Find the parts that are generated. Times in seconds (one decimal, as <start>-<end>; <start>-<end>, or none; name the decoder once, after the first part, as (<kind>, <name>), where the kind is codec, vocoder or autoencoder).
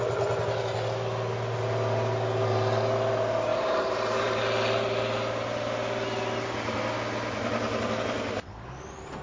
3.5-4.4 (vocoder, BigVGAN v2)